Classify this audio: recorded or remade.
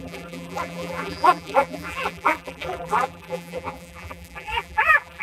remade